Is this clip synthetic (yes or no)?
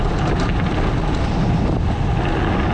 no